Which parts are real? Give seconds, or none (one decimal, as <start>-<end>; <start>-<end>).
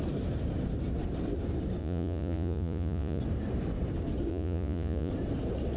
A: 0.0-1.8; 3.2-4.3; 5.1-5.8